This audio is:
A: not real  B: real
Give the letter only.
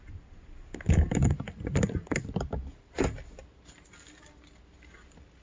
B